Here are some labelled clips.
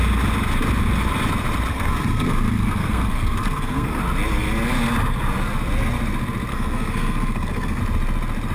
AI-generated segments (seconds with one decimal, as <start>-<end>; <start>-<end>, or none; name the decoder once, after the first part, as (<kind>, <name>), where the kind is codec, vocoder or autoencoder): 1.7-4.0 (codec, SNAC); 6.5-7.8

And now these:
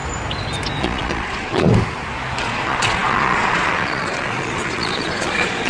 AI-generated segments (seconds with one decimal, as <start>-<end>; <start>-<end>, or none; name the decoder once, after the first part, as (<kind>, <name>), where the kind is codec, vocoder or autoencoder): 0.8-1.7 (vocoder, Vocos); 2.4-5.7

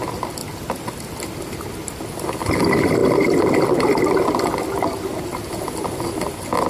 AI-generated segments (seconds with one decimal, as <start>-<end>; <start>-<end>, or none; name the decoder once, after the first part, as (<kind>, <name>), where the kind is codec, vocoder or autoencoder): none